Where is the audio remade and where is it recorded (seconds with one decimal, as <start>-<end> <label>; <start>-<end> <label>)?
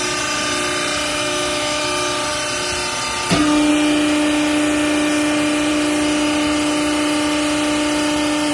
0.0-1.1 recorded; 1.1-1.8 remade; 1.8-8.5 recorded